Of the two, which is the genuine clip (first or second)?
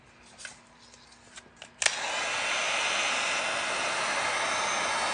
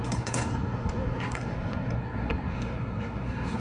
first